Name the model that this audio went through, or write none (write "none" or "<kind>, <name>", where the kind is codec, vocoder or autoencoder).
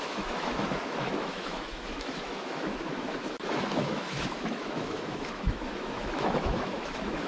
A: autoencoder, DAC-VAE